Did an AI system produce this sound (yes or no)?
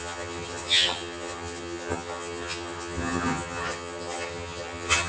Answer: yes